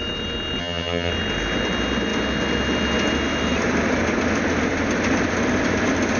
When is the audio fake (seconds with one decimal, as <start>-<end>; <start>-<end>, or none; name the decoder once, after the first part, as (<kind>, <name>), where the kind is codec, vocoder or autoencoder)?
0.6-1.1 (vocoder, HiFi-GAN)